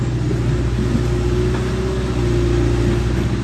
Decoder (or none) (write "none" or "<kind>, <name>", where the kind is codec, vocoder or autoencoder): none